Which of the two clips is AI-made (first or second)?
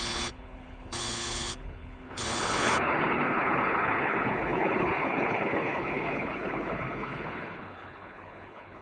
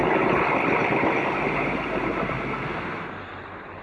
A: first